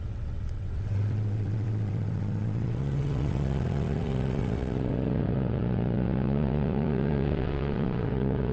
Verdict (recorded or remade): remade